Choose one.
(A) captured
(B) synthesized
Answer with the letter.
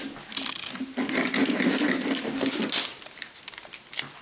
A